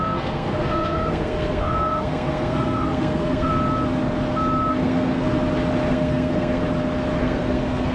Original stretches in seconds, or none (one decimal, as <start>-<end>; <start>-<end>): 3.5-4.7; 5.3-5.9; 6.6-7.2